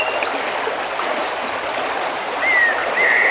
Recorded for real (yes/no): yes